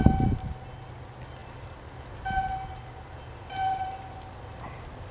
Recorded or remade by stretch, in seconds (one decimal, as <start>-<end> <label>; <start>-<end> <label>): 0.0-5.1 recorded